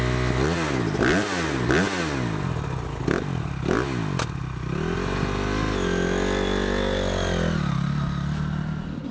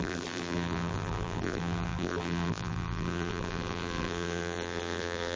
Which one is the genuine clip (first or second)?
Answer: first